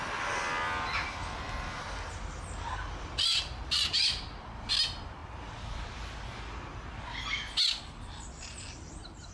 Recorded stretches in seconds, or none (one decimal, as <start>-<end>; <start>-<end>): 0.0-9.3